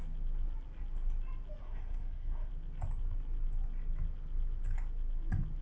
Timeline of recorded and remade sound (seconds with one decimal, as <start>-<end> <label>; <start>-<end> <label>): 0.0-1.6 recorded; 1.6-2.5 remade; 2.5-5.6 recorded